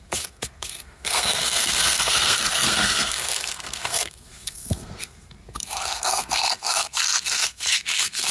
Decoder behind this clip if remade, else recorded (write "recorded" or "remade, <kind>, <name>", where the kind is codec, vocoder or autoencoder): remade, codec, SNAC